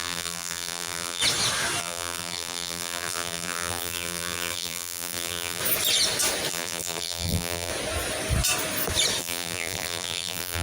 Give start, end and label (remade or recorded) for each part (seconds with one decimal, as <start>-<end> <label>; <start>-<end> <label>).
0.0-1.2 remade; 1.2-1.8 recorded; 1.8-5.6 remade; 5.6-6.5 recorded; 6.5-7.7 remade; 7.7-9.2 recorded; 9.2-10.6 remade